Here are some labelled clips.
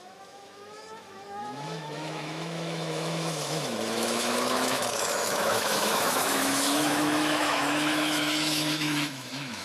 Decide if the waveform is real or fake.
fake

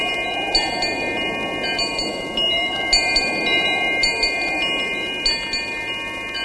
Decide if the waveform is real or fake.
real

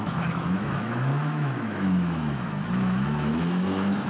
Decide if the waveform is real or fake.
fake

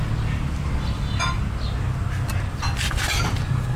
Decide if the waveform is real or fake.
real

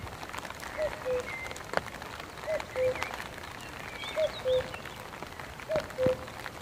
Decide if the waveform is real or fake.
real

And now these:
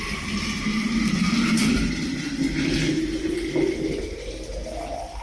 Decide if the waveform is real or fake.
real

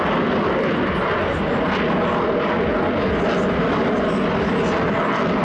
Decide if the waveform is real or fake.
real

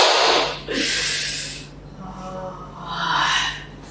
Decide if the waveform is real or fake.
real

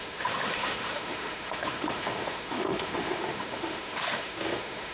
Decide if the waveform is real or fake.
fake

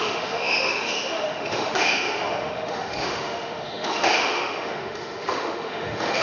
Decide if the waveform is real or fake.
fake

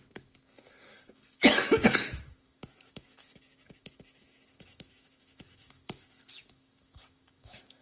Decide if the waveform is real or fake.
fake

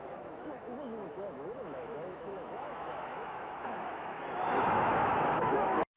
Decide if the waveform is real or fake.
fake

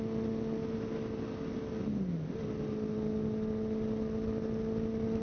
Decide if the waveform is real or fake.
real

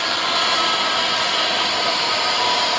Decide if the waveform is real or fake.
real